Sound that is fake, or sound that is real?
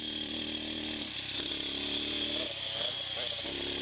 real